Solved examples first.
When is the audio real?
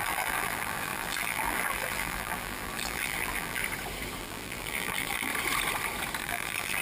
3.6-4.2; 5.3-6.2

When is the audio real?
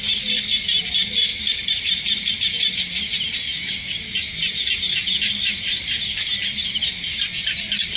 0.0-8.0